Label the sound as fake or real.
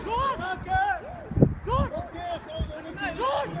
real